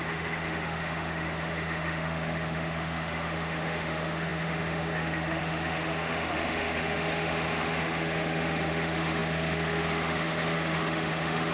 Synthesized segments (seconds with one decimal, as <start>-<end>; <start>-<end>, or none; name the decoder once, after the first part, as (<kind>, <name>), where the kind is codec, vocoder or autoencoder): 0.0-11.5 (autoencoder, DAC-VAE)